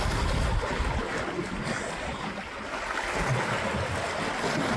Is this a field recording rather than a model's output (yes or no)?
yes